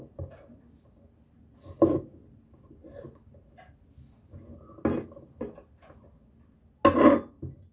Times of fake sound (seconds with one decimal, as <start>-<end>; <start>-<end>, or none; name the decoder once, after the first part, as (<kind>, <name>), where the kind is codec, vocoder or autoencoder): none